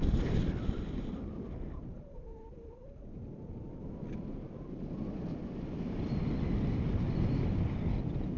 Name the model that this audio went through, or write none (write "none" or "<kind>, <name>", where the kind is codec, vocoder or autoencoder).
none